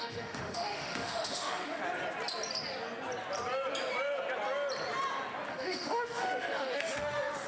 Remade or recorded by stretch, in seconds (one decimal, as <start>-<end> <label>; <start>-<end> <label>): 0.0-1.8 remade; 1.8-5.5 recorded; 5.5-7.5 remade